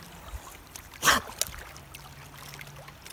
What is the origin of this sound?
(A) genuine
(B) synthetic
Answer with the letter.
A